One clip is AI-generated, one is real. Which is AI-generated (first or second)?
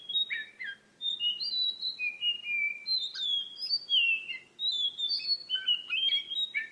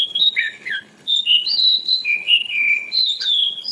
second